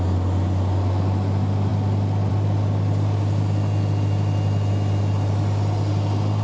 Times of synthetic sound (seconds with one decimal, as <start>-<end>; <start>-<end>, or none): none